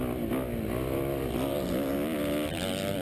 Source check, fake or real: real